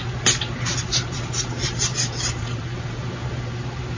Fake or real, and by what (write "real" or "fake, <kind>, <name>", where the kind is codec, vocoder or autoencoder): fake, vocoder, BigVGAN v2